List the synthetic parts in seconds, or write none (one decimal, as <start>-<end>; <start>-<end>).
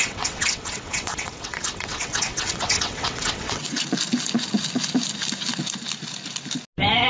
0.0-3.8